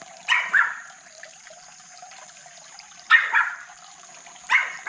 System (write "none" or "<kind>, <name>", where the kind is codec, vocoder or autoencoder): vocoder, BigVGAN v2